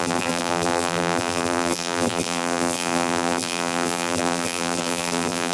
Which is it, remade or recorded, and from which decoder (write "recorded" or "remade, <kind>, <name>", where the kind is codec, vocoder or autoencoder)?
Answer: remade, vocoder, BigVGAN v2